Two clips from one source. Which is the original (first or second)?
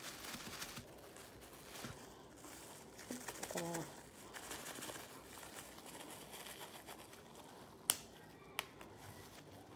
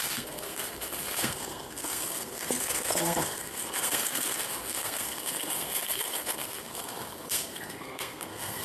first